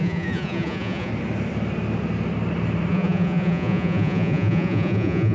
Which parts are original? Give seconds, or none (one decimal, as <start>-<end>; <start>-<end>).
1.1-2.9